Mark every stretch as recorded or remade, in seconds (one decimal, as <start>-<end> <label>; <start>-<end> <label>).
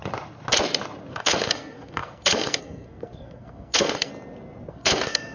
0.0-1.1 recorded; 1.1-4.1 remade; 4.1-4.7 recorded; 4.7-5.3 remade